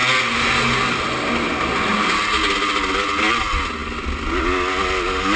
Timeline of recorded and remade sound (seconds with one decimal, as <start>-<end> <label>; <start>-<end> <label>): 0.0-5.4 recorded